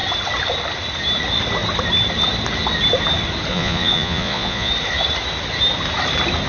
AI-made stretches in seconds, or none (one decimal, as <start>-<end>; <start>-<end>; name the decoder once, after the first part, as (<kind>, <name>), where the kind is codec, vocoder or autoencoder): 3.5-4.7 (vocoder, Vocos)

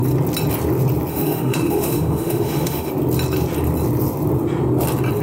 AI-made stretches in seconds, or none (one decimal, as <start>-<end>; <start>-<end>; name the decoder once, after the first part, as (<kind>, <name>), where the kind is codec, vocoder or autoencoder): 1.1-2.9 (autoencoder, DAC-VAE)

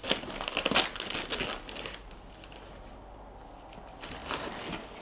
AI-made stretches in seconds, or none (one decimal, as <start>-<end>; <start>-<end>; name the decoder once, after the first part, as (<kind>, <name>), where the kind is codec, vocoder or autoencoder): none

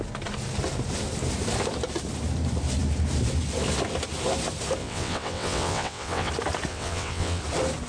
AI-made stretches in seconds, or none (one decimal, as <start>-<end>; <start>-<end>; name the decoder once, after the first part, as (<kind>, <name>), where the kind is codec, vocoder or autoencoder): 4.8-6.3 (vocoder, WaveNeXt); 6.7-7.4